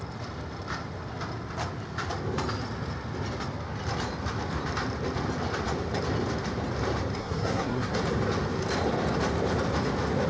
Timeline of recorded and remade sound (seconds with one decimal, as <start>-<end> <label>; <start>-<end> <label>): 0.0-7.2 recorded; 7.2-8.0 remade; 8.0-10.3 recorded

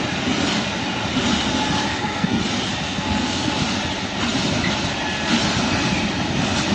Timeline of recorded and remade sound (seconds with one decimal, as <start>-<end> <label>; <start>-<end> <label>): 0.0-1.9 recorded; 1.9-2.4 remade; 2.4-2.8 recorded; 2.8-3.5 remade; 3.5-6.7 recorded